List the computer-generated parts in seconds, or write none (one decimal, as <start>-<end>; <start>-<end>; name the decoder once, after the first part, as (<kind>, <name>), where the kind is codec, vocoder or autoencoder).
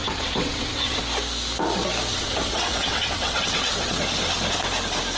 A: 0.0-1.0 (vocoder, WaveNeXt); 2.1-4.0